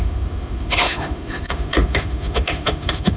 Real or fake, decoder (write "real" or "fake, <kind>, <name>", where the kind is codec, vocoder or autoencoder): fake, autoencoder, DAC-VAE